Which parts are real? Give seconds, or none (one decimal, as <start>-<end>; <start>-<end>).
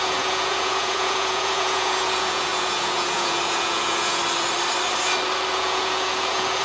4.2-5.5